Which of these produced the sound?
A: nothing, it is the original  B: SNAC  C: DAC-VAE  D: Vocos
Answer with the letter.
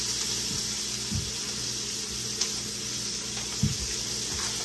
A